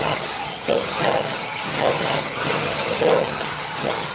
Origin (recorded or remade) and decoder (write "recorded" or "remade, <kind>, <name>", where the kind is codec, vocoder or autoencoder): remade, vocoder, HiFi-GAN